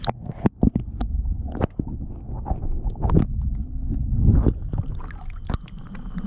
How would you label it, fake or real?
real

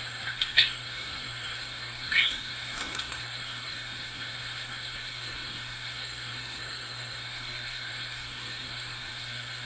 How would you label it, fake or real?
fake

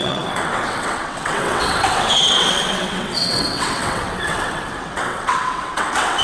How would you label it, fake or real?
fake